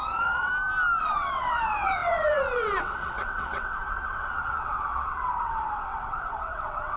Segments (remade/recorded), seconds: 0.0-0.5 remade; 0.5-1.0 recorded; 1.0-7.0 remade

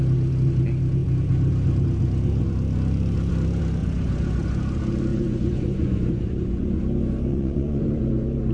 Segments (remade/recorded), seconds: 0.0-3.8 recorded; 3.8-4.6 remade; 4.6-5.1 recorded; 5.1-6.8 remade; 6.8-7.3 recorded; 7.3-8.0 remade; 8.0-8.5 recorded

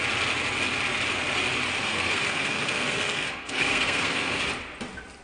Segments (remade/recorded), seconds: 0.0-1.8 recorded; 1.8-4.4 remade; 4.4-5.2 recorded

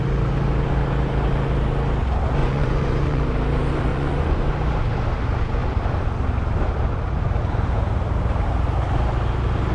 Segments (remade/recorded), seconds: 0.0-2.4 recorded; 2.4-3.2 remade; 3.2-3.9 recorded; 3.9-4.5 remade; 4.5-9.7 recorded

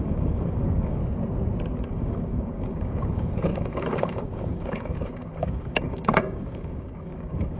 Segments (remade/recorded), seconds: 0.0-1.0 remade; 1.0-1.7 recorded; 1.7-7.6 remade